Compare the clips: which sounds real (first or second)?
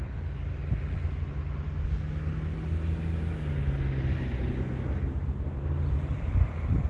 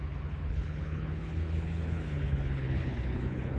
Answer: first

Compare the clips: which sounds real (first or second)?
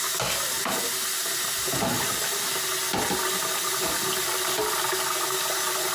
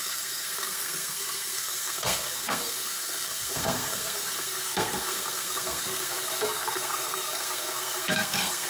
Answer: first